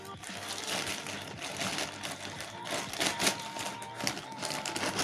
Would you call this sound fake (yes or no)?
no